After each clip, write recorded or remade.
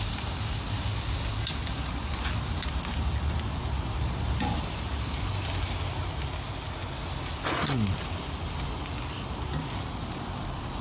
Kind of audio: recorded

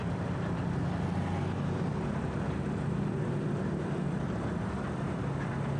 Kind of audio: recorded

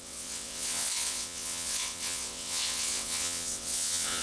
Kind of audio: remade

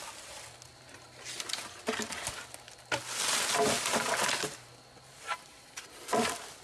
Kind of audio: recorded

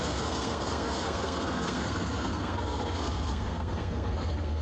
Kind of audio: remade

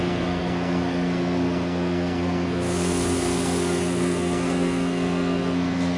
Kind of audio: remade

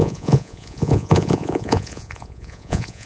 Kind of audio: remade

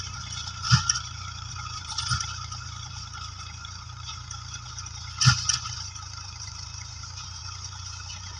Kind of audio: remade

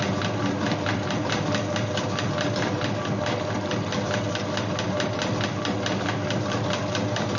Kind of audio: recorded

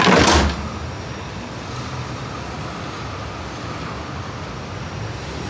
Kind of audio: recorded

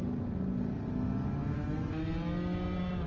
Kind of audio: recorded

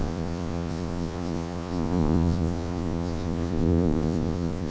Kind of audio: remade